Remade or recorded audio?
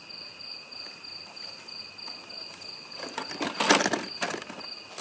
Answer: recorded